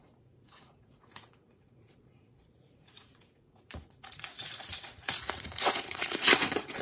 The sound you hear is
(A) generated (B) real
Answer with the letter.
A